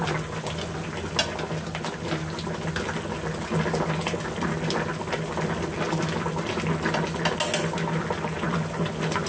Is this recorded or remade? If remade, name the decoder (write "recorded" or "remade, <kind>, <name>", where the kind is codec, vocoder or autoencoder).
recorded